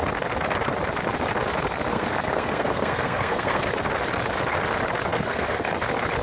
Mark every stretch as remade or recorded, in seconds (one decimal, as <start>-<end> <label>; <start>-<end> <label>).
0.0-1.9 recorded; 1.9-3.6 remade; 3.6-5.1 recorded; 5.1-5.7 remade; 5.7-6.2 recorded